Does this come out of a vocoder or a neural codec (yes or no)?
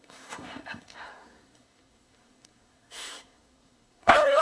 yes